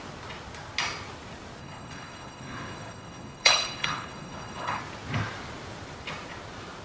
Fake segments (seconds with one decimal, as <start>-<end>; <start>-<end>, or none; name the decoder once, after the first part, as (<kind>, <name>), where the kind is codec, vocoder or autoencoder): 1.6-4.8 (codec, HILCodec)